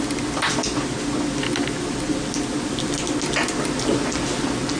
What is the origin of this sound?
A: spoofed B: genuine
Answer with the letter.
B